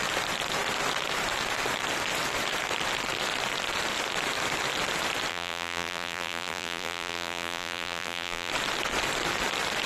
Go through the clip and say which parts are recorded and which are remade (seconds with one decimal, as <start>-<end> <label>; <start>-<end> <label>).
0.0-5.3 recorded; 5.3-8.5 remade; 8.5-9.9 recorded